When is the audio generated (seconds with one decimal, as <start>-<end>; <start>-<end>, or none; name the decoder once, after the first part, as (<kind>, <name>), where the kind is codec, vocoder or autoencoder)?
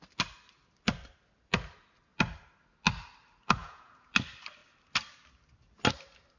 3.6-4.1 (vocoder, Vocos)